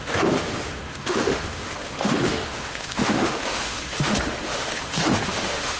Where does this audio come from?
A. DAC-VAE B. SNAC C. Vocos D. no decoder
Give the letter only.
A